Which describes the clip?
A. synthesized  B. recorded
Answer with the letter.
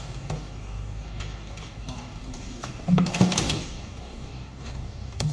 A